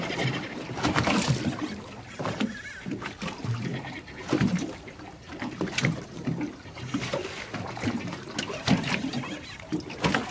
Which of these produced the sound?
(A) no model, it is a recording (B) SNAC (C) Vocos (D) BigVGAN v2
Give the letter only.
A